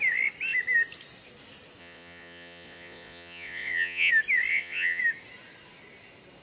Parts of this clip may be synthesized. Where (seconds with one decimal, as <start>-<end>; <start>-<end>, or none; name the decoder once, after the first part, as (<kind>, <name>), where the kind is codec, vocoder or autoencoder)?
1.8-4.1 (vocoder, Vocos); 4.5-5.0